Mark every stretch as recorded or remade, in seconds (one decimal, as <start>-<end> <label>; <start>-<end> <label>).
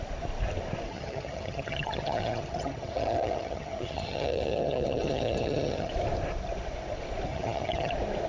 0.0-0.9 recorded; 0.9-5.9 remade; 5.9-7.3 recorded; 7.3-7.9 remade; 7.9-8.3 recorded